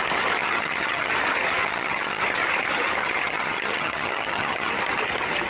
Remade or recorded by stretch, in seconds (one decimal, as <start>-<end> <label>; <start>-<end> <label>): 0.0-0.4 recorded; 0.4-1.1 remade; 1.1-1.6 recorded; 1.6-2.2 remade; 2.2-3.0 recorded; 3.0-4.7 remade; 4.7-5.5 recorded

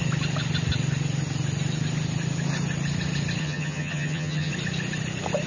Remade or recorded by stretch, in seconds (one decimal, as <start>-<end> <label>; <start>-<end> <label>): 0.0-3.4 recorded; 3.4-4.5 remade; 4.5-5.5 recorded